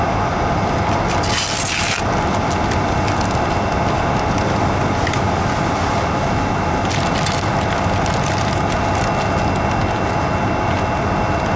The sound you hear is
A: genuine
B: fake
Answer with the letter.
A